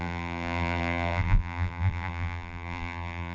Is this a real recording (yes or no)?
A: no